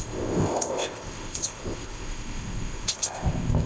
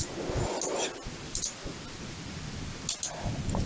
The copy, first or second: first